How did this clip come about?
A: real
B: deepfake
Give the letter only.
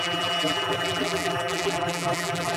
B